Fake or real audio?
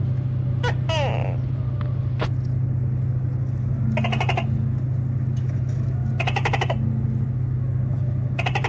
real